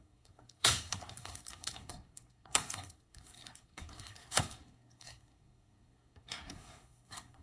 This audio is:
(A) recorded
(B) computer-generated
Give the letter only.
B